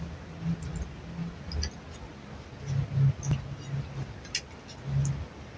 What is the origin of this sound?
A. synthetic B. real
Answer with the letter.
B